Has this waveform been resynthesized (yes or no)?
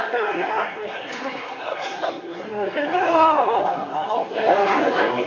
yes